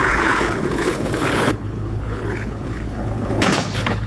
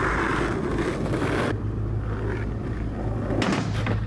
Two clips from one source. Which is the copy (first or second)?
first